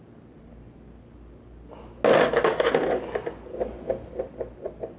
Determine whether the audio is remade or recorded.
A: recorded